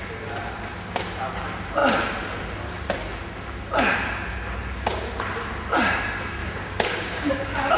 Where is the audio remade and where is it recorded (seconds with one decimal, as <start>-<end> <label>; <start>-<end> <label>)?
0.0-6.4 recorded; 6.4-7.8 remade